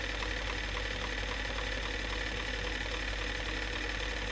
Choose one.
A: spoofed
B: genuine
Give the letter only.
B